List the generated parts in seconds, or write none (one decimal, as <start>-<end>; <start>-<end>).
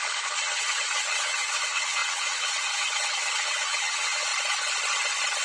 0.0-4.3